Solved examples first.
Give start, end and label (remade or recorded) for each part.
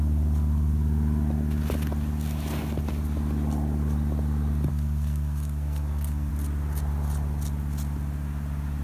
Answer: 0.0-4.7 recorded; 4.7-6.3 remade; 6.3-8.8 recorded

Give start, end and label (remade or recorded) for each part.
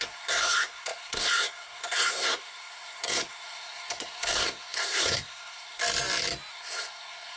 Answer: 0.0-5.8 remade; 5.8-6.5 recorded; 6.5-7.4 remade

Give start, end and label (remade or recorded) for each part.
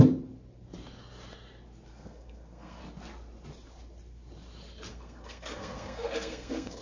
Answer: 0.0-1.9 recorded; 1.9-2.8 remade; 2.8-4.9 recorded; 4.9-6.8 remade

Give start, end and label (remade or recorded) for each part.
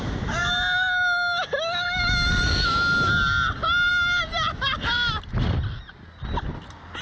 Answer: 0.0-7.0 recorded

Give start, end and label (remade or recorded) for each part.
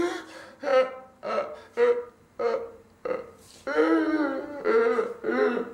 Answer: 0.0-5.7 recorded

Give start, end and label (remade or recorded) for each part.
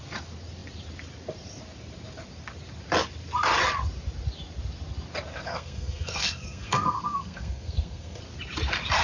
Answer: 0.0-5.3 recorded; 5.3-8.2 remade; 8.2-9.0 recorded